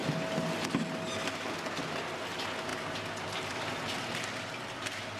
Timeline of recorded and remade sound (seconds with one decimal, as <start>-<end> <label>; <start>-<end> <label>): 0.0-5.2 recorded